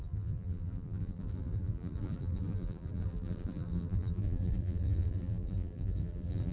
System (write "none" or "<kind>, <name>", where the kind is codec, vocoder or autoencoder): vocoder, BigVGAN v2